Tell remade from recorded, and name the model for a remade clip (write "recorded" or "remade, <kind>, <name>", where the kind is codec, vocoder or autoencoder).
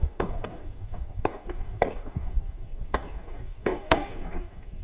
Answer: remade, codec, DAC